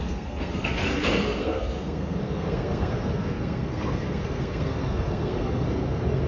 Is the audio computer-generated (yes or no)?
yes